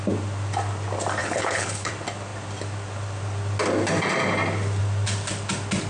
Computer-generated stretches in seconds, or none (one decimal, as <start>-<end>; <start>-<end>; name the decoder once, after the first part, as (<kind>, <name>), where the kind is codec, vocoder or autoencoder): 1.2-1.9 (codec, HILCodec)